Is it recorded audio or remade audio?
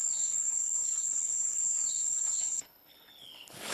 remade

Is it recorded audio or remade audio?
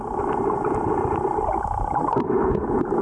recorded